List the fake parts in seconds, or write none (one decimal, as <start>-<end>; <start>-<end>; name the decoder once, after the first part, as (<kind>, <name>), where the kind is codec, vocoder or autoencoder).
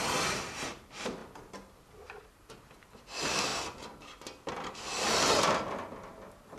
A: none